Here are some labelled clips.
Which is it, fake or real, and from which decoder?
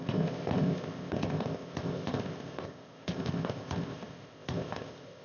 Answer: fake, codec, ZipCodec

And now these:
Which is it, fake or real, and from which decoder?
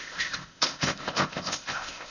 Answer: fake, codec, ZipCodec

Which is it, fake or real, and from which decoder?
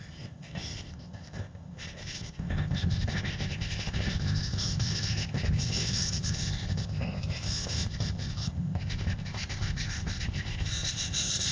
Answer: fake, codec, ZipCodec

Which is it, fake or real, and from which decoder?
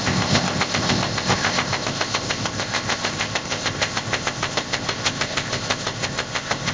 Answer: fake, codec, ZipCodec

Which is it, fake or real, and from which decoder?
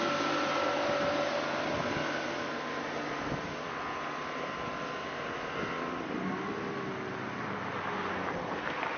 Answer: real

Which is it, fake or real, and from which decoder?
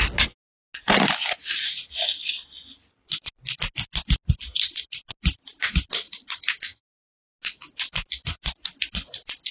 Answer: real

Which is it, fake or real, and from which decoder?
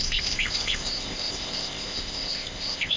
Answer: fake, codec, ZipCodec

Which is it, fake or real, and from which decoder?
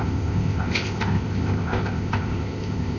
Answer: fake, codec, ZipCodec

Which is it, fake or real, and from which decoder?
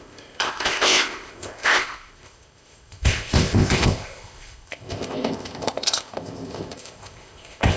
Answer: fake, codec, ZipCodec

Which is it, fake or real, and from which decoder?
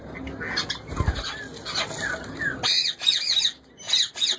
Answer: real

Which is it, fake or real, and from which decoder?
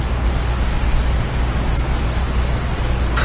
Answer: real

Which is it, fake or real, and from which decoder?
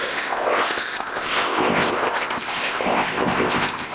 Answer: fake, codec, ZipCodec